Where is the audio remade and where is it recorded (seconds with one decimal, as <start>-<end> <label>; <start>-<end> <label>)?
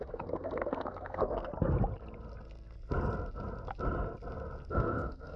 0.0-1.5 remade; 1.5-4.7 recorded; 4.7-5.4 remade